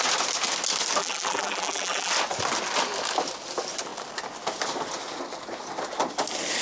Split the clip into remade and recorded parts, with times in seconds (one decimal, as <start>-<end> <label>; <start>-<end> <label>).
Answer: 0.0-1.0 recorded; 1.0-2.1 remade; 2.1-6.6 recorded